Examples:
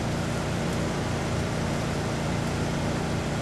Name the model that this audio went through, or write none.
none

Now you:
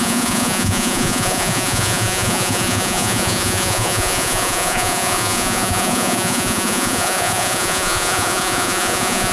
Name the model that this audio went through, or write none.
vocoder, Vocos